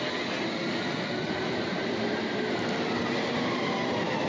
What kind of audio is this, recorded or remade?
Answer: recorded